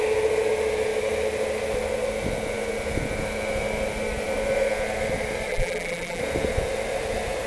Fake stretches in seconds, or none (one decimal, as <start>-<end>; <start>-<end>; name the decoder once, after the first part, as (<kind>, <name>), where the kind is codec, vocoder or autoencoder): 5.5-6.2 (vocoder, BigVGAN v2)